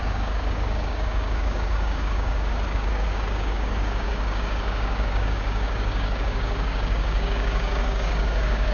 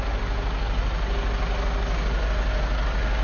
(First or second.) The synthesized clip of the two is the first